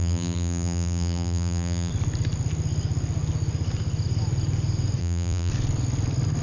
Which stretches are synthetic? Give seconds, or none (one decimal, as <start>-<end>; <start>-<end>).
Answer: 0.0-1.9; 5.0-5.5